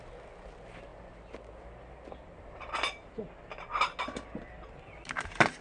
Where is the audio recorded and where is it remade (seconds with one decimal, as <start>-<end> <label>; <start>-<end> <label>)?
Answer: 0.0-5.6 recorded